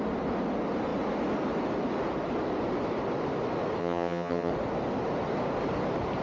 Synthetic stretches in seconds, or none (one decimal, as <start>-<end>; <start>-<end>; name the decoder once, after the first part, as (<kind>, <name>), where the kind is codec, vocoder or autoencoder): 3.8-4.5 (vocoder, HiFi-GAN)